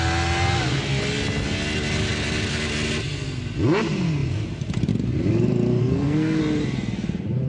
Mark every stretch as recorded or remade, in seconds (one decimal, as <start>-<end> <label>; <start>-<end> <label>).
0.0-5.8 recorded; 5.8-6.4 remade; 6.4-7.5 recorded